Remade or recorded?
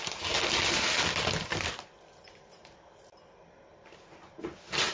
recorded